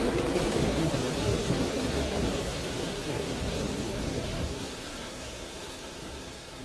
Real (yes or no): no